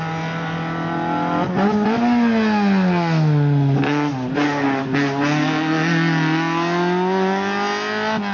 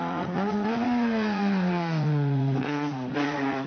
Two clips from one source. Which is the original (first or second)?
first